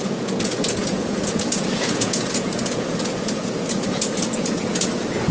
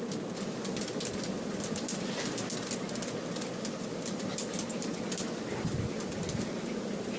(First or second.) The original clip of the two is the second